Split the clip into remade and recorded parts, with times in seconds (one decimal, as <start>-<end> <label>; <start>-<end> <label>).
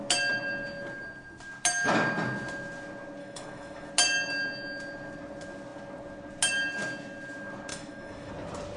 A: 0.0-3.2 recorded; 3.2-3.9 remade; 3.9-7.7 recorded; 7.7-8.3 remade; 8.3-8.8 recorded